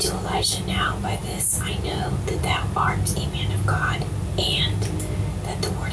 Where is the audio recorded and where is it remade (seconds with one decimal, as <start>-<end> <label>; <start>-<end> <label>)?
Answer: 0.0-5.9 recorded